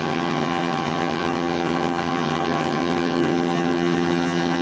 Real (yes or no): no